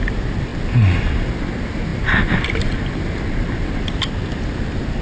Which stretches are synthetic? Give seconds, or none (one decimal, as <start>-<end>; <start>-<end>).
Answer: none